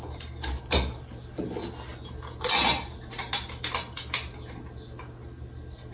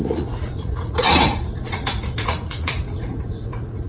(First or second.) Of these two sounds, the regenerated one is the second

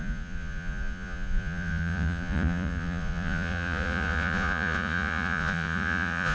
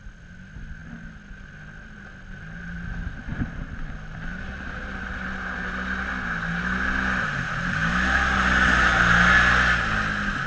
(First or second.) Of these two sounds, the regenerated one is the first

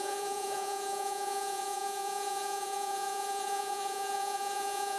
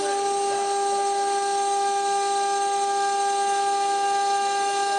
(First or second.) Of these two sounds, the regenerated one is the first